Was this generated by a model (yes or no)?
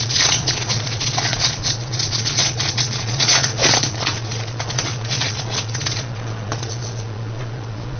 yes